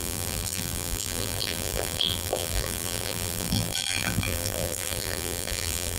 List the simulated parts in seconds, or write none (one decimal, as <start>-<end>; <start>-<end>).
0.0-6.0